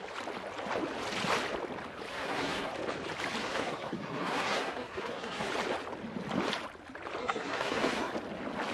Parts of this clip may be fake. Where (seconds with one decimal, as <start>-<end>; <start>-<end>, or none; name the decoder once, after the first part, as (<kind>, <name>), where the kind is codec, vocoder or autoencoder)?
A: 2.1-2.7 (codec, SNAC); 3.4-5.5; 7.2-8.1